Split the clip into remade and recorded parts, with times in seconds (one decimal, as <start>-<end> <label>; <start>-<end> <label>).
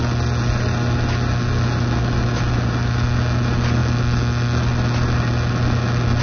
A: 0.0-6.2 recorded